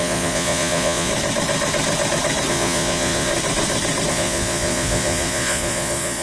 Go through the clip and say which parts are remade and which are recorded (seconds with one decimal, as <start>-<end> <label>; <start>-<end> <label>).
0.0-1.1 remade; 1.1-2.5 recorded; 2.5-3.3 remade; 3.3-4.1 recorded; 4.1-6.2 remade